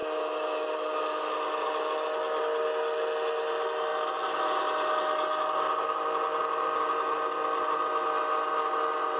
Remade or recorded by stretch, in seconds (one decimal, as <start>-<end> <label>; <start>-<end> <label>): 0.0-0.7 remade; 0.7-9.2 recorded